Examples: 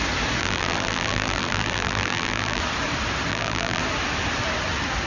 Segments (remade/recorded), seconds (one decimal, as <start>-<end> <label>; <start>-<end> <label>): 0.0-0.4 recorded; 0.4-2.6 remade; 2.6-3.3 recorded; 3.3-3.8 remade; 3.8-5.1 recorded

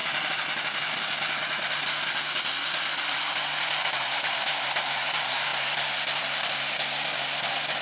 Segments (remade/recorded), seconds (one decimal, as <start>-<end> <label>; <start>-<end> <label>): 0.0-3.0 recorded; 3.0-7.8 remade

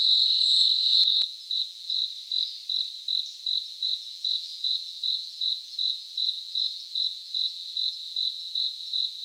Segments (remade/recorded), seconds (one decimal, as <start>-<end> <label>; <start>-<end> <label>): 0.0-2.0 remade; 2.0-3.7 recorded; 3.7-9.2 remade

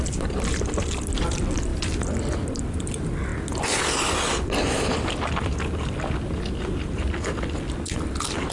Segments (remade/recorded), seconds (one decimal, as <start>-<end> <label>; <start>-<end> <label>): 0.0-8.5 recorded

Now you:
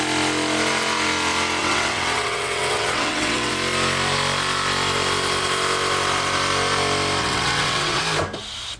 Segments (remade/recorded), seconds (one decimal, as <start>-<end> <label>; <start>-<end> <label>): 0.0-1.6 recorded; 1.6-3.5 remade; 3.5-7.2 recorded; 7.2-8.0 remade; 8.0-8.8 recorded

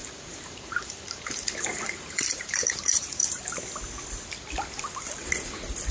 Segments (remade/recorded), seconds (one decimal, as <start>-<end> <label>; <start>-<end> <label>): 0.0-3.4 remade; 3.4-5.9 recorded